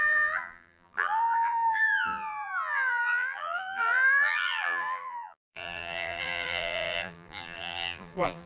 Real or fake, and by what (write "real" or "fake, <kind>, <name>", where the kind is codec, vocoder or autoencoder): fake, vocoder, BigVGAN v2